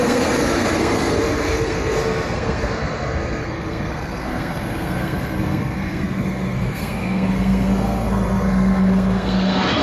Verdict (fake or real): fake